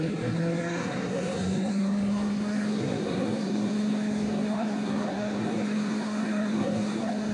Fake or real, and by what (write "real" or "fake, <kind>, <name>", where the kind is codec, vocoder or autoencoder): fake, codec, SNAC